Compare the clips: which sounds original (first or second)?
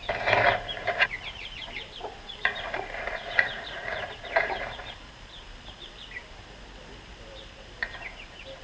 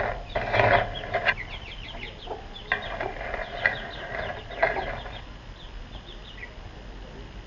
second